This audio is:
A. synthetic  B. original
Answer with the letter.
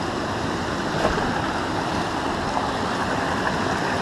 B